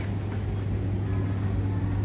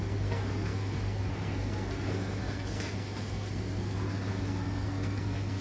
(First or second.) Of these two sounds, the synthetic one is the second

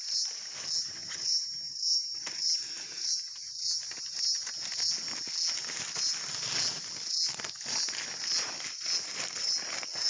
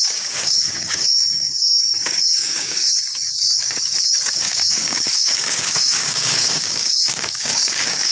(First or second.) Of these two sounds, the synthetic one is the second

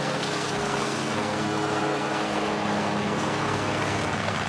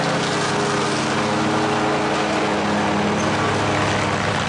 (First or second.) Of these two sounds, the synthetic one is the first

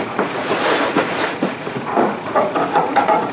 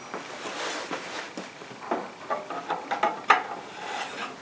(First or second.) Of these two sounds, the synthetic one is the first